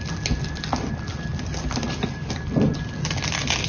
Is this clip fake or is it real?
real